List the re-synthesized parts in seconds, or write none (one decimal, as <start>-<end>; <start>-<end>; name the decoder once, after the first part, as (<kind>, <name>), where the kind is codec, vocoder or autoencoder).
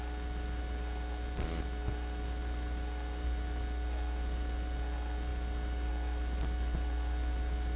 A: none